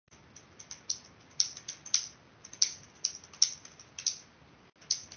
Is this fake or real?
real